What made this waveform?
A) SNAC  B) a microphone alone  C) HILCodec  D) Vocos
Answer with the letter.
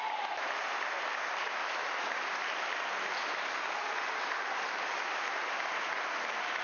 B